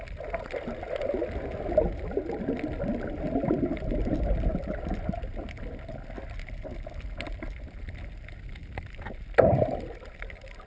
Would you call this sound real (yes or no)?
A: yes